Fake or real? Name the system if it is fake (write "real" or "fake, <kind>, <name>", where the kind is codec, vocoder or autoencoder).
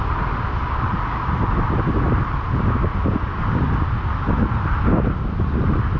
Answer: real